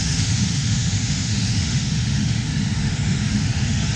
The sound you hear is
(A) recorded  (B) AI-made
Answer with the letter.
B